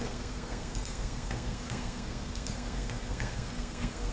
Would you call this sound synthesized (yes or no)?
yes